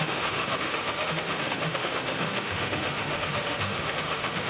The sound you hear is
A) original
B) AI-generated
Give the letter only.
B